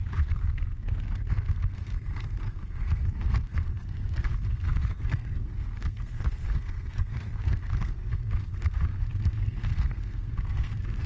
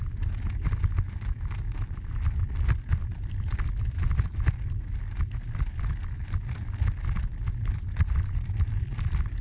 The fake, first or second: first